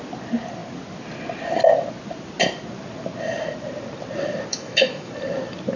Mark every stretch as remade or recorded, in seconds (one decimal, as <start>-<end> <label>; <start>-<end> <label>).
0.0-4.5 recorded; 4.5-5.1 remade; 5.1-5.8 recorded